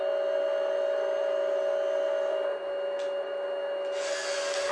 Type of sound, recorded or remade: recorded